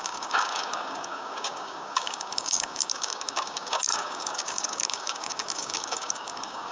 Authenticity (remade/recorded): remade